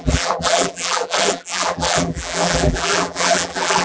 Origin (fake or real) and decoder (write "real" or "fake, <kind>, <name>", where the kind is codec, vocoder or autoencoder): fake, vocoder, BigVGAN v2